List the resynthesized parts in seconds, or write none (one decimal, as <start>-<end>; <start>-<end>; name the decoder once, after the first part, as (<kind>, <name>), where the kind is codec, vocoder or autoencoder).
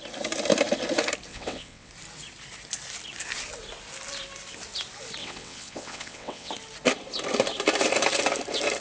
1.3-1.9 (vocoder, WaveNeXt); 5.2-6.5